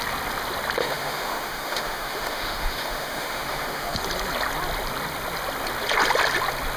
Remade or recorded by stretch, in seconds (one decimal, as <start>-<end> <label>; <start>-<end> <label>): 0.0-0.8 recorded; 0.8-4.0 remade; 4.0-6.8 recorded